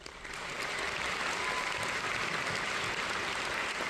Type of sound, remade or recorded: recorded